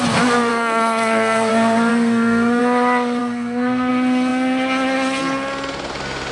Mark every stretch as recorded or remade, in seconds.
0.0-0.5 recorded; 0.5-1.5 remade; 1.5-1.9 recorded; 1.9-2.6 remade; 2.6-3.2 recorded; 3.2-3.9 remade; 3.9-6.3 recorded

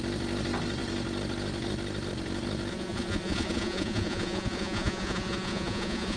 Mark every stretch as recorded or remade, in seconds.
0.0-2.7 recorded; 2.7-6.2 remade